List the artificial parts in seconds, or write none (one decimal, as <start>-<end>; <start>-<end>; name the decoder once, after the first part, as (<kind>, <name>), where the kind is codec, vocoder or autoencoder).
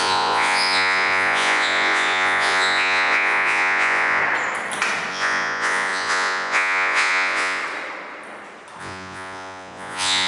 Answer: 0.0-4.2 (vocoder, Vocos); 5.1-7.6; 8.8-10.3